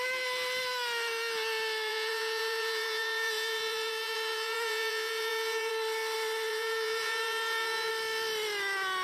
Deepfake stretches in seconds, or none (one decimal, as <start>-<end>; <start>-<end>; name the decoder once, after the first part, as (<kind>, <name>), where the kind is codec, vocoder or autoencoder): 1.9-5.7 (vocoder, Vocos); 6.5-7.9